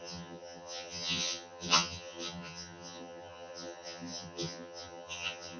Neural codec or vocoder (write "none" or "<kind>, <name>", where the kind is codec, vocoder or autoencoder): vocoder, HiFi-GAN